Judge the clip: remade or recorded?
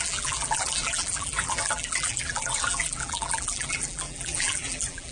remade